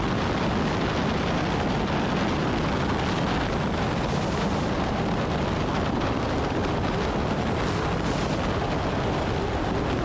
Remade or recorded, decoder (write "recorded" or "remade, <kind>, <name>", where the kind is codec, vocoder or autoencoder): recorded